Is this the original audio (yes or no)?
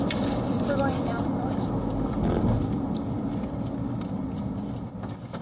yes